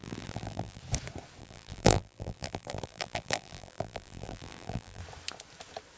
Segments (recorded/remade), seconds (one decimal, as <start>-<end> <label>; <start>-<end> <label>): 0.0-0.8 remade; 0.8-1.4 recorded; 1.4-5.0 remade; 5.0-6.0 recorded